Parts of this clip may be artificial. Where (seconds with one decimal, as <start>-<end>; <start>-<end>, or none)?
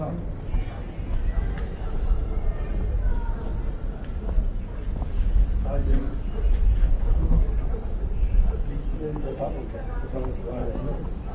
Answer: 6.8-7.4